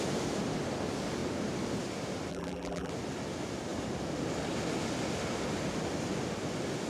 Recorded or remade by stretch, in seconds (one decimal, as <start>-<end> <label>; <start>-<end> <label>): 0.0-2.3 recorded; 2.3-2.9 remade; 2.9-6.9 recorded

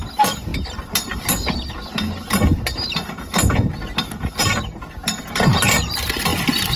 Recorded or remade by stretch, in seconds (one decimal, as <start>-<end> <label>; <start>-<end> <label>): 0.0-6.3 recorded; 6.3-6.8 remade

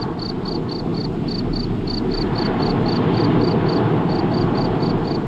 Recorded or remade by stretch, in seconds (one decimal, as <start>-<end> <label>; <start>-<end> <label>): 0.0-5.3 recorded